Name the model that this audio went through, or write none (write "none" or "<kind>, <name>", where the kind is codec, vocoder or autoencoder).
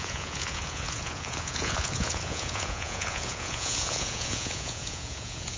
vocoder, Vocos